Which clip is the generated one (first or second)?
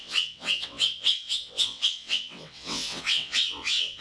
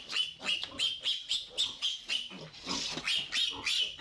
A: first